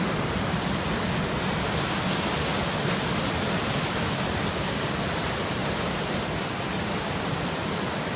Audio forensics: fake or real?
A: real